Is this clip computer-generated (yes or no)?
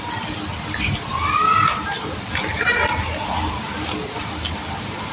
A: no